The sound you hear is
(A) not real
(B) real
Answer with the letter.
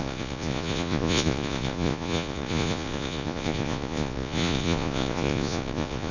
A